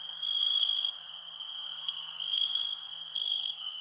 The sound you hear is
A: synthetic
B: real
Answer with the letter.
A